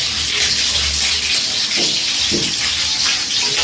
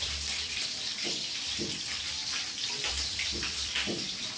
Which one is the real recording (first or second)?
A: first